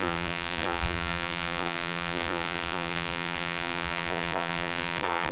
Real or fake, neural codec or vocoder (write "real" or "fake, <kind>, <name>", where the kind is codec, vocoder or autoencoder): fake, vocoder, BigVGAN v2